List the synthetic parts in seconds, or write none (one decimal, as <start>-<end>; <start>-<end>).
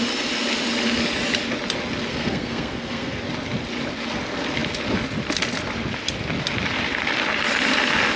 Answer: 2.1-3.2